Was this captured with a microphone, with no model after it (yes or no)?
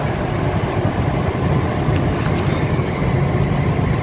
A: yes